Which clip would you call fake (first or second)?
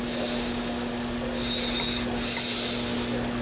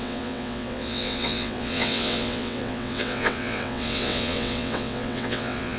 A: second